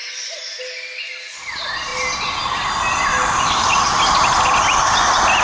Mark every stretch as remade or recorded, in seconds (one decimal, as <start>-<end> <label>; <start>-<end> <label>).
0.0-3.1 recorded; 3.1-3.8 remade; 3.8-5.4 recorded